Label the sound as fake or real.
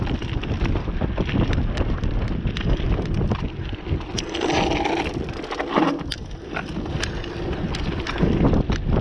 real